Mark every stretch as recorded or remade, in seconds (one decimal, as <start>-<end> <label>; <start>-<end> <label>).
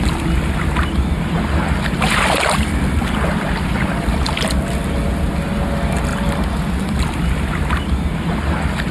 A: 0.0-8.9 recorded